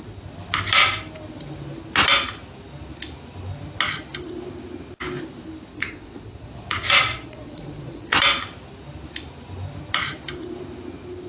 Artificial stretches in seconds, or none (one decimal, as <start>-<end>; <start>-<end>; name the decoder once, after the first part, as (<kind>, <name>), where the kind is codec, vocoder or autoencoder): 5.7-8.2 (vocoder, Vocos)